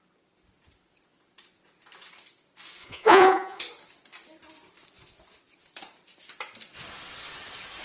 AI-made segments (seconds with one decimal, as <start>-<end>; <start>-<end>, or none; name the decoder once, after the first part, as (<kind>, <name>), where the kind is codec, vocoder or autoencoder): 2.8-3.6 (vocoder, Vocos)